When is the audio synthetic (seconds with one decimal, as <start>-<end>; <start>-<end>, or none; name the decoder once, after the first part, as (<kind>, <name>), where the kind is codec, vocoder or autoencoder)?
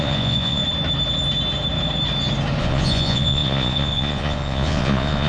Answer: 0.0-0.6 (vocoder, Vocos); 2.6-5.3